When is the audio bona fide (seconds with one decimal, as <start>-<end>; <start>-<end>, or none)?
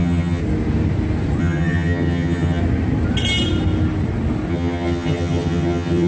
0.4-1.4; 2.6-4.5